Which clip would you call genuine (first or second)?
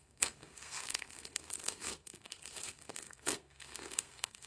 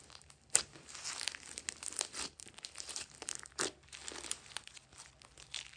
second